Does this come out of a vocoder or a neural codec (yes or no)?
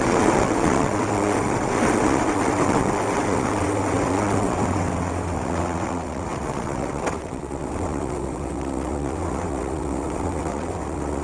yes